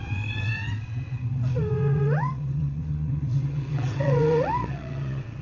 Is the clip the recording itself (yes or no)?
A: no